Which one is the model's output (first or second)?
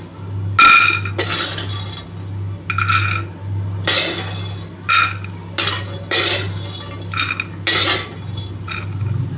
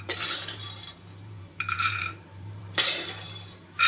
second